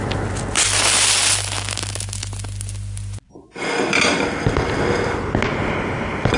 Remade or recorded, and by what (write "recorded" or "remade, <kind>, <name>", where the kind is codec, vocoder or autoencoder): recorded